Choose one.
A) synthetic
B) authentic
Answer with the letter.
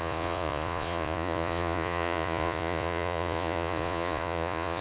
A